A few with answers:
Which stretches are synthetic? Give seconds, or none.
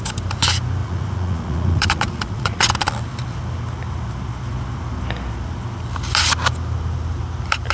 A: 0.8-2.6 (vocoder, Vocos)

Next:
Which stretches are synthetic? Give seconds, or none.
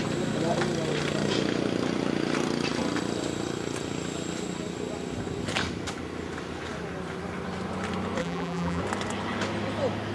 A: 8.2-8.8 (vocoder, BigVGAN v2)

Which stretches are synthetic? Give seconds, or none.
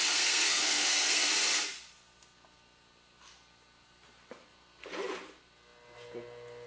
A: 0.0-1.3 (codec, SNAC)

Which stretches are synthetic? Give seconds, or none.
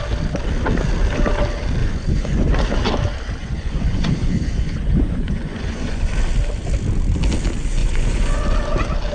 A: 1.8-2.5 (vocoder, Vocos); 3.4-6.1; 7.8-8.4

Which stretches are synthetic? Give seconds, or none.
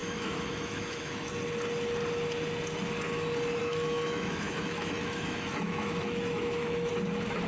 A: 0.0-1.3 (autoencoder, DAC-VAE); 3.6-6.9